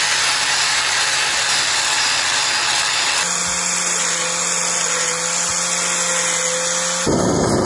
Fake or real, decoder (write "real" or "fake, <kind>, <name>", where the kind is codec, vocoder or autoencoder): real